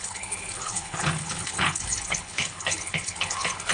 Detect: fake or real fake